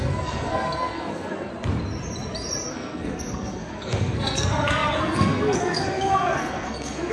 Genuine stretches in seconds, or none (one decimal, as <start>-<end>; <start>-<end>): 1.5-2.7